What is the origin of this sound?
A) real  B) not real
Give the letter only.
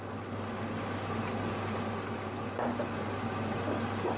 A